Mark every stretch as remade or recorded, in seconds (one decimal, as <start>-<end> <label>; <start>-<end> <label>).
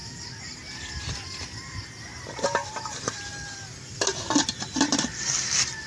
0.0-5.9 recorded